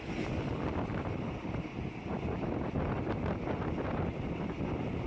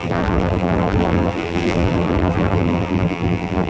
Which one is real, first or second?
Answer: first